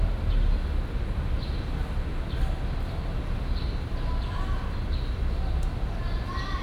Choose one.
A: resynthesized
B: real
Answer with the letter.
B